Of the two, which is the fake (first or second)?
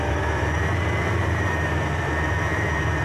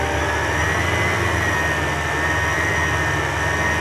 first